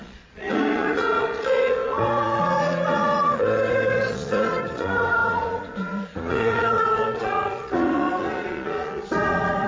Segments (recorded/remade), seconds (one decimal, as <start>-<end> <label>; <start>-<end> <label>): 0.0-9.7 remade